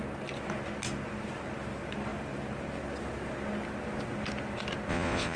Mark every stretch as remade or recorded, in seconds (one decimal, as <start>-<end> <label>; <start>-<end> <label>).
0.0-4.9 recorded; 4.9-5.4 remade